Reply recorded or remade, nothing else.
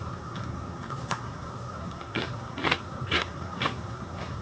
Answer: remade